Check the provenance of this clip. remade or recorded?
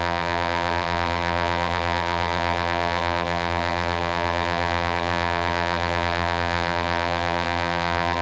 remade